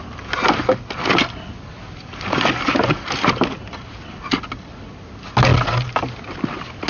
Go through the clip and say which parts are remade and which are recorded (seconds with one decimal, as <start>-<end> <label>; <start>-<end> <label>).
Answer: 0.0-6.9 recorded

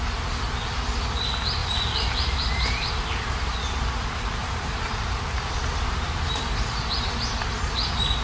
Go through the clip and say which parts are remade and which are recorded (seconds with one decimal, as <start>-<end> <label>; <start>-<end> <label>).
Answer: 0.0-1.6 recorded; 1.6-2.9 remade; 2.9-4.4 recorded; 4.4-6.8 remade; 6.8-8.2 recorded

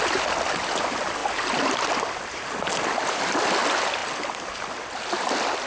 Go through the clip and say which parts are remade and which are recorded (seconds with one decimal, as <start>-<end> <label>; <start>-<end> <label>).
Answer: 0.0-5.7 recorded

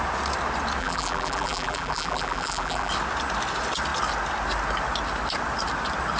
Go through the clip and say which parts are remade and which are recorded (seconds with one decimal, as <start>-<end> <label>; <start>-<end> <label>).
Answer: 0.0-0.8 recorded; 0.8-2.9 remade; 2.9-6.2 recorded

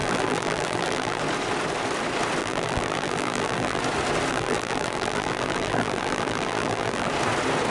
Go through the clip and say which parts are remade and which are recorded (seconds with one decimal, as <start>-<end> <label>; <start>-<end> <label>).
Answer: 0.0-1.2 remade; 1.2-2.4 recorded; 2.4-3.8 remade; 3.8-4.3 recorded; 4.3-7.1 remade; 7.1-7.7 recorded

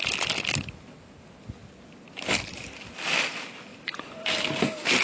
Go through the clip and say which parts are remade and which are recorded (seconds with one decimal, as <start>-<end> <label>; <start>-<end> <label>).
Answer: 0.0-3.7 recorded; 3.7-4.4 remade; 4.4-5.0 recorded

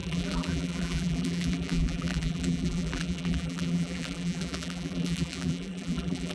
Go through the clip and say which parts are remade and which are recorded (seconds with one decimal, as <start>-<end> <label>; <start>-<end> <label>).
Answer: 0.0-6.3 remade